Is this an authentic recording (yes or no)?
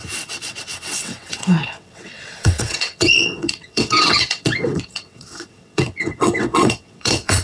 no